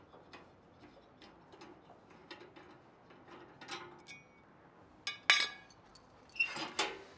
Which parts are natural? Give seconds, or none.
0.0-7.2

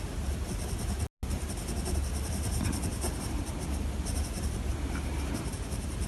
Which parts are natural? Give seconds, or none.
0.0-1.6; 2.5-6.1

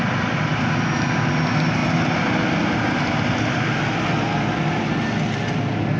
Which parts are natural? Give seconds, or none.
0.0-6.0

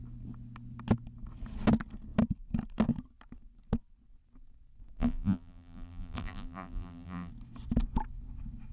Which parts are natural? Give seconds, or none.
0.0-5.0; 7.3-8.7

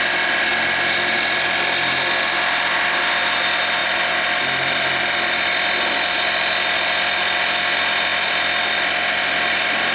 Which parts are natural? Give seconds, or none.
0.0-9.9

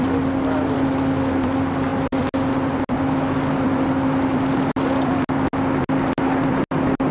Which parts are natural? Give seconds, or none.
0.0-7.1